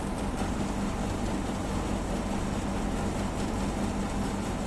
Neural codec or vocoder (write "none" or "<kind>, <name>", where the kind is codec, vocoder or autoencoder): none